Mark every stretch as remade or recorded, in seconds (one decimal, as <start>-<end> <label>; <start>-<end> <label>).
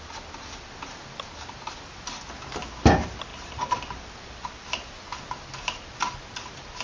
0.0-3.3 recorded; 3.3-4.1 remade; 4.1-6.8 recorded